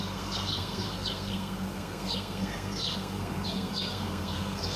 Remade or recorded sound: remade